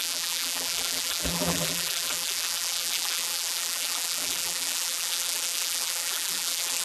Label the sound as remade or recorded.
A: remade